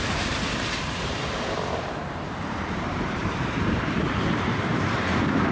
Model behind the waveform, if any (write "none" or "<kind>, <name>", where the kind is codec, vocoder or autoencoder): vocoder, BigVGAN v2